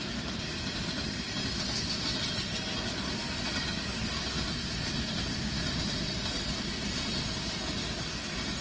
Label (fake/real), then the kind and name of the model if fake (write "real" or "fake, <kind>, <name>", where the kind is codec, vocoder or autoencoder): real